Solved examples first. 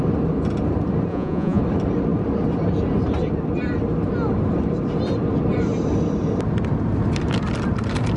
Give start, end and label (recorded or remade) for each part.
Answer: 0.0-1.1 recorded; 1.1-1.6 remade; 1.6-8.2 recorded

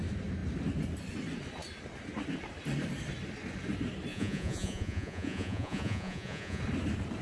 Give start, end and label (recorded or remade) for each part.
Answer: 0.0-4.1 recorded; 4.1-6.6 remade; 6.6-7.2 recorded